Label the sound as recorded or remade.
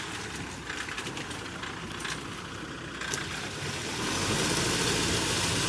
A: recorded